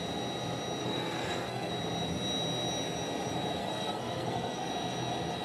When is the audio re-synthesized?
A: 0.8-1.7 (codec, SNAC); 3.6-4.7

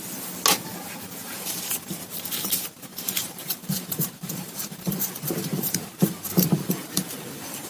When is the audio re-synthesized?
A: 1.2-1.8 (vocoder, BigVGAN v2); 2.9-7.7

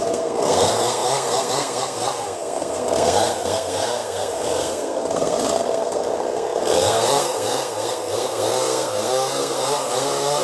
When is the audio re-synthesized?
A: 0.0-10.4 (codec, SNAC)